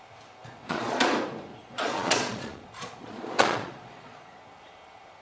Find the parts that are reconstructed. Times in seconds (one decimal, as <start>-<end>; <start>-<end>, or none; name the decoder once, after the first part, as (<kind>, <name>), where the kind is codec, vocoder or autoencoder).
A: 0.4-1.0 (vocoder, Vocos); 1.5-4.4